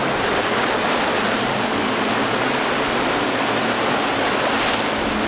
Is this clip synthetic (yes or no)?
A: no